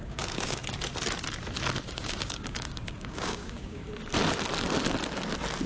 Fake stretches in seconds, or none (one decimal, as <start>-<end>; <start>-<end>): 0.0-0.6; 1.9-3.8